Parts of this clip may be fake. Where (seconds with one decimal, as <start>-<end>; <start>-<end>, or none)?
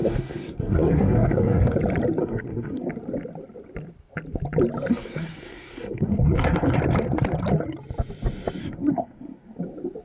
0.0-1.8; 2.2-2.9; 4.9-6.8; 8.6-9.6